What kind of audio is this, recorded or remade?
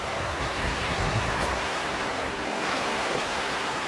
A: remade